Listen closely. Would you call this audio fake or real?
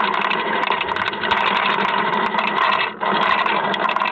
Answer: real